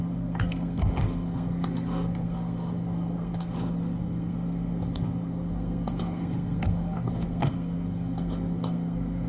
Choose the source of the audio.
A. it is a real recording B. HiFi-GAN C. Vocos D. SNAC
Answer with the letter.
D